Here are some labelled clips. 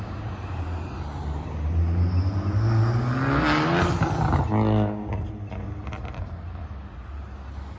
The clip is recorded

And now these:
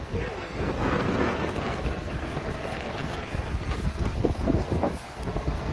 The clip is remade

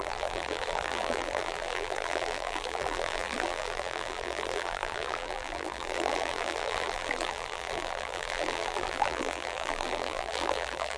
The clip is remade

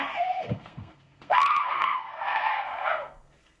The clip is remade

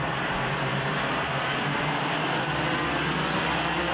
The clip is recorded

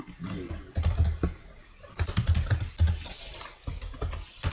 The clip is recorded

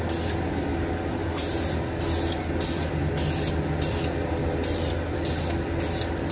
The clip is recorded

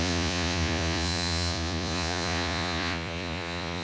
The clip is remade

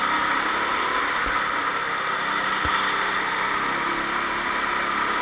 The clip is recorded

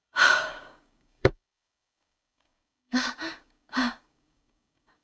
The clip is remade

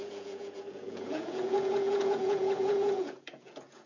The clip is remade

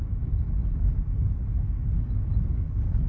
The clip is recorded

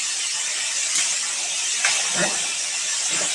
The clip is recorded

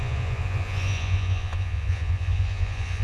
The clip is remade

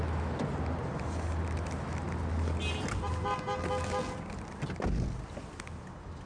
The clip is recorded